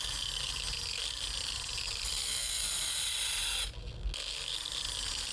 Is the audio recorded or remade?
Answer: recorded